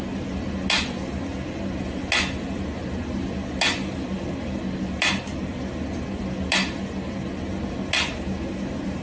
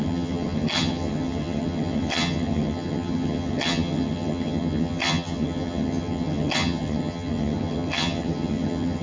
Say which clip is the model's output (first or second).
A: second